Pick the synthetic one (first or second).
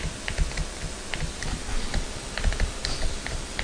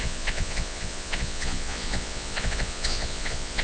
second